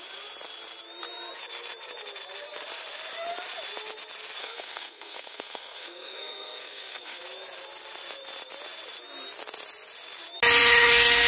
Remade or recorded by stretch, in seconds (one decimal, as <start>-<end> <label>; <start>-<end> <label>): 0.0-4.4 recorded; 4.4-7.2 remade; 7.2-11.3 recorded